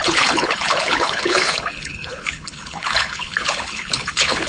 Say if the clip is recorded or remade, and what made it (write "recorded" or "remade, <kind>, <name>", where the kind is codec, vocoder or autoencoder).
remade, codec, HILCodec